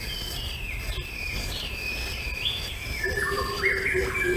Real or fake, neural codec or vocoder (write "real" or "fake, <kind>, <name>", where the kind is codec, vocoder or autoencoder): real